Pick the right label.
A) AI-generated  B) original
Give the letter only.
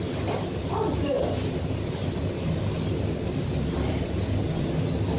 B